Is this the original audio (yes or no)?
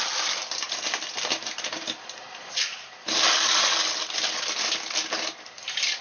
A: no